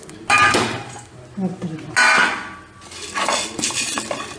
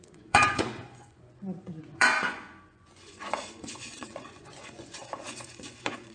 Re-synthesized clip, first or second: second